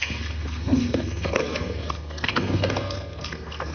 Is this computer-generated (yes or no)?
yes